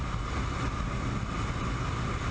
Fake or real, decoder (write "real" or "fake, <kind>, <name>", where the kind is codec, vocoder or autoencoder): real